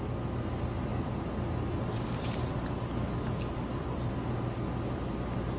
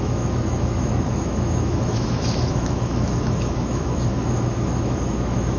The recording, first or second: first